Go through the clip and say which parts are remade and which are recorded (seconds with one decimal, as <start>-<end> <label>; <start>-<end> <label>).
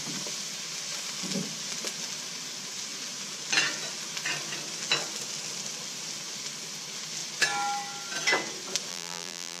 0.0-8.9 recorded; 8.9-9.6 remade